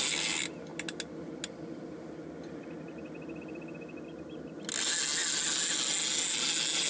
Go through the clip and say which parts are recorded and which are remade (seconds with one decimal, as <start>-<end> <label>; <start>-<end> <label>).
0.0-6.9 recorded